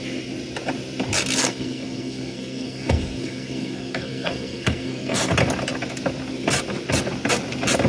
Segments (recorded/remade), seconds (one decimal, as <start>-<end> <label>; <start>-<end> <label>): 0.0-1.4 recorded; 1.4-5.3 remade; 5.3-7.9 recorded